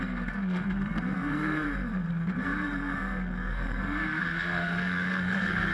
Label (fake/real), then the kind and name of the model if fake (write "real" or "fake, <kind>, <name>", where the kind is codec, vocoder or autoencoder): fake, codec, SNAC